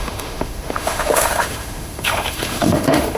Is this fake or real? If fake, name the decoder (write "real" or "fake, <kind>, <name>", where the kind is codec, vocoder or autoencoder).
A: fake, autoencoder, DAC-VAE